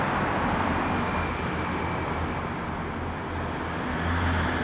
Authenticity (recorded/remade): recorded